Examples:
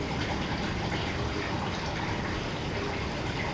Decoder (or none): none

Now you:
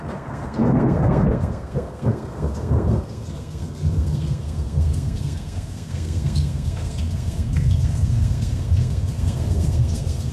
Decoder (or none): codec, SNAC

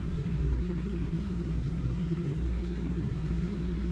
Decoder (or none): codec, SNAC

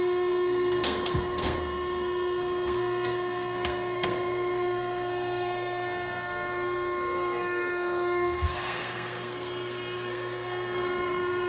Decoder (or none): codec, SNAC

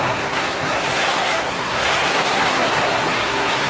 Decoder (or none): codec, SNAC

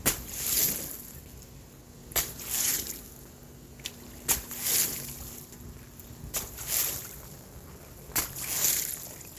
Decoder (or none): none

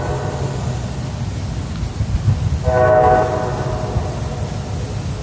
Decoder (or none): none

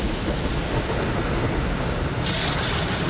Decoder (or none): none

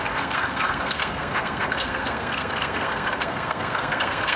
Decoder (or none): codec, SNAC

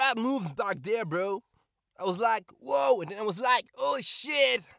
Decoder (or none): none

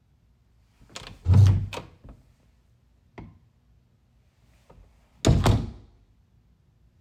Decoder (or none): none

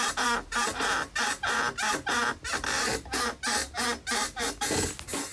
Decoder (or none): none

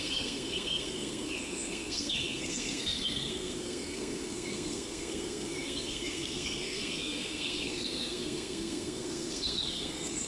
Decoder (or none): codec, SNAC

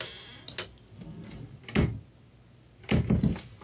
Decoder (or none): none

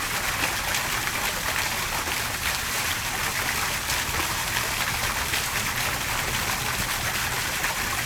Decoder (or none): none